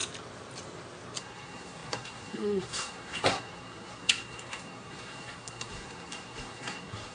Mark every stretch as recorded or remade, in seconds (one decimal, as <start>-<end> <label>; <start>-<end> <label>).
0.0-1.2 recorded; 1.2-7.1 remade